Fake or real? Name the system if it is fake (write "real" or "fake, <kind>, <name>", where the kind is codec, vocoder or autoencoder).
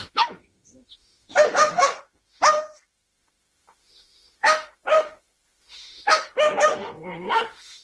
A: fake, autoencoder, DAC-VAE